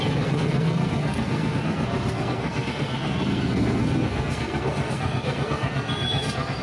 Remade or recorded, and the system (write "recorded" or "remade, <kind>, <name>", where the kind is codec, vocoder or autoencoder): remade, codec, SNAC